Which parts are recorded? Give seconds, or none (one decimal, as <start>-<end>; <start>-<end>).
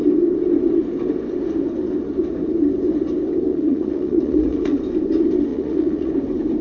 0.0-3.5; 4.8-5.5; 6.1-6.6